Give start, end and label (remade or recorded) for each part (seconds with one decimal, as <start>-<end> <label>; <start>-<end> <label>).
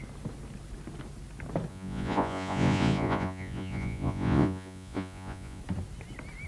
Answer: 0.0-1.7 recorded; 1.7-5.6 remade; 5.6-6.5 recorded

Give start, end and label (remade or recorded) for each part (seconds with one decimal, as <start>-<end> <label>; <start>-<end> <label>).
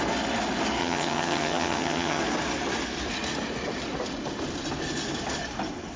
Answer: 0.0-0.8 recorded; 0.8-2.2 remade; 2.2-6.0 recorded